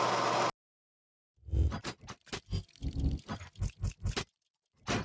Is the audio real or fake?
real